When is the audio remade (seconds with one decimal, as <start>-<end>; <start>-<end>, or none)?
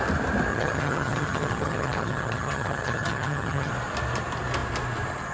0.5-3.7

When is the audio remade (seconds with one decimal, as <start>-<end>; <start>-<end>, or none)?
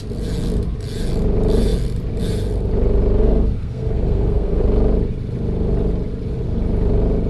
3.2-4.6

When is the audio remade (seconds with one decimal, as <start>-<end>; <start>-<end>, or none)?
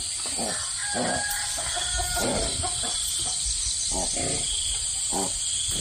0.8-1.3; 2.3-3.8; 5.1-5.8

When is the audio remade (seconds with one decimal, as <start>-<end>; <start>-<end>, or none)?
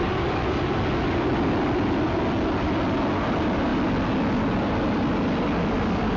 none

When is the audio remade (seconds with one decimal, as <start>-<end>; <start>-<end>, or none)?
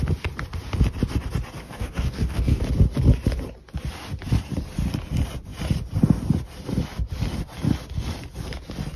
1.6-2.6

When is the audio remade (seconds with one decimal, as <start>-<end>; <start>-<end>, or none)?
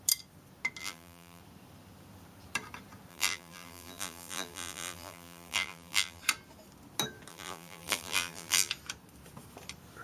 0.8-1.4; 3.1-6.2; 7.3-8.7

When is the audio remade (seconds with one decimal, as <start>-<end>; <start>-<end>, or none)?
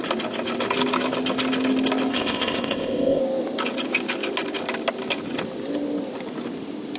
2.1-3.2